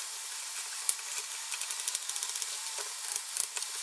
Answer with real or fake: real